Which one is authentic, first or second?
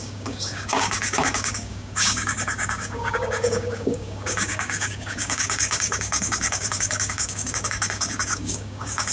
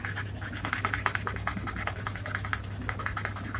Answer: second